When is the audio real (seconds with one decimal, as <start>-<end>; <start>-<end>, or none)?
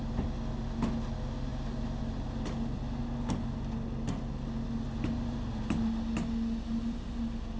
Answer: 0.0-7.6